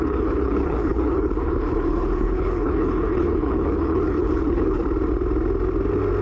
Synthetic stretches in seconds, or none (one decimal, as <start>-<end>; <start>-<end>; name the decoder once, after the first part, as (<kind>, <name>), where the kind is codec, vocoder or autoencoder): 0.0-4.8 (codec, HILCodec)